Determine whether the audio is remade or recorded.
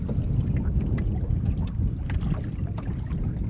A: recorded